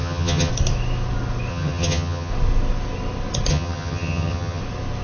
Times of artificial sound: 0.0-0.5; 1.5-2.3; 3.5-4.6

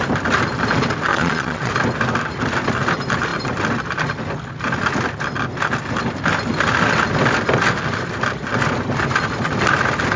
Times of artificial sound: 1.1-1.7